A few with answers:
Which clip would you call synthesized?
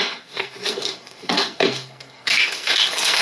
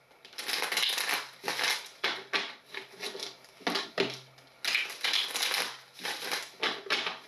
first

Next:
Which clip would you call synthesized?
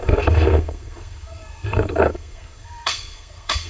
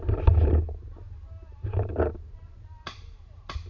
first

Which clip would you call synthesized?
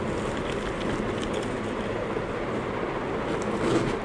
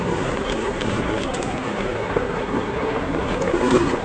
second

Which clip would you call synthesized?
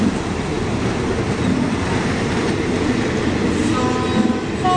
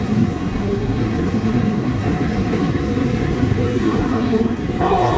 second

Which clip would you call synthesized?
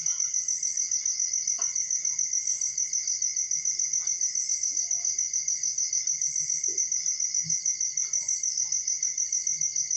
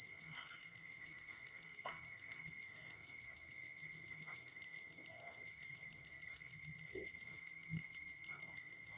second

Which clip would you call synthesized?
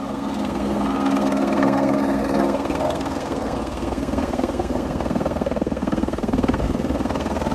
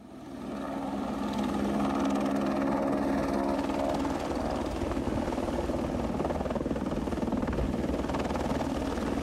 first